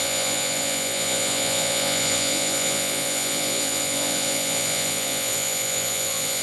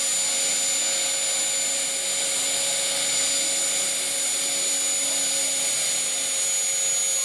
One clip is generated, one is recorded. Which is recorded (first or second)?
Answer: second